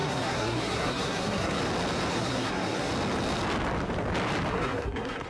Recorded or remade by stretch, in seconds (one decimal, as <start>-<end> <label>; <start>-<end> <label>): 0.0-1.6 remade; 1.6-2.1 recorded; 2.1-2.9 remade; 2.9-4.5 recorded; 4.5-5.3 remade